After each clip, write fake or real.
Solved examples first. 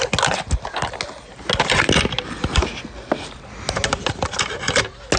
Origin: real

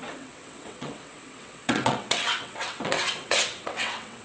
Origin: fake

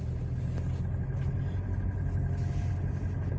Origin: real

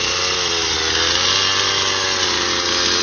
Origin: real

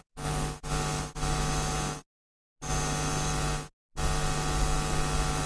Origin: real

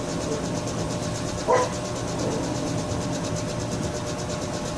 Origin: real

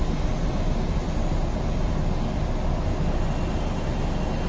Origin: real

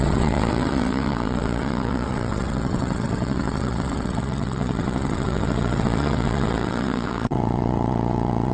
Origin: fake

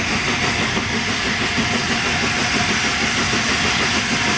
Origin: real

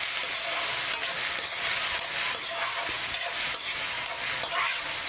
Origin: real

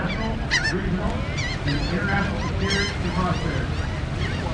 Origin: real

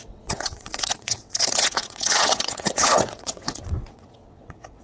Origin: fake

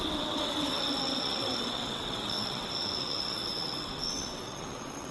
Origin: fake